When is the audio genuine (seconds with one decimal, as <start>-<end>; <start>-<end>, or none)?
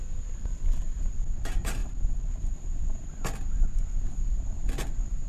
0.0-5.3